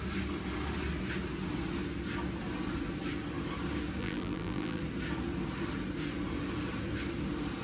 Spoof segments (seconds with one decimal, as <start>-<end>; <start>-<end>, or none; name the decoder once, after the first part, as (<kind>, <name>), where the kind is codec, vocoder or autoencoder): 4.0-4.8 (vocoder, BigVGAN v2)